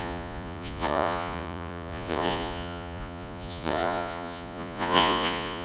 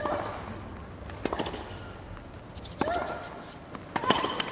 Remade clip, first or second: first